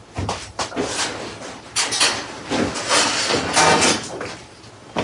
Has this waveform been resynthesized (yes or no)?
no